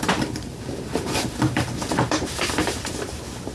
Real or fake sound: fake